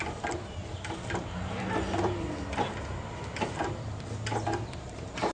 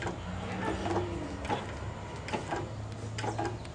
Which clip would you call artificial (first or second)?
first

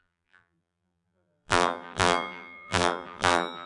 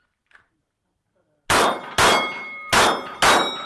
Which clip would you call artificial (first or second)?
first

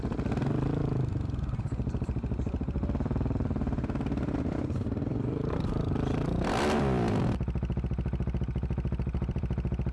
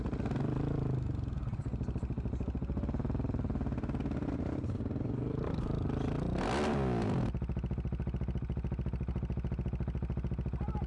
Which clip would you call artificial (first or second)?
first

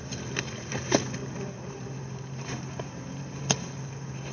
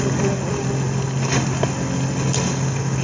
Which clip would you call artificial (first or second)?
first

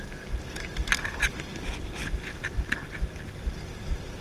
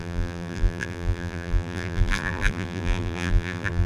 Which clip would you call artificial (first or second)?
second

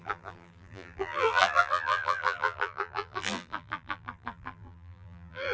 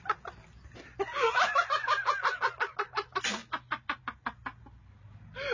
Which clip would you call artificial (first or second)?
first